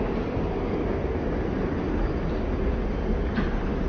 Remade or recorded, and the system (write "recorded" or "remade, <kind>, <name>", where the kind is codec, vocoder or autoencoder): recorded